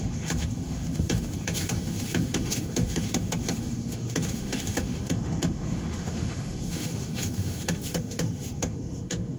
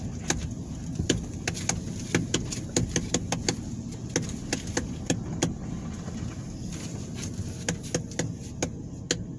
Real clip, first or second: second